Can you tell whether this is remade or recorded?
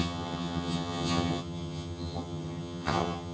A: remade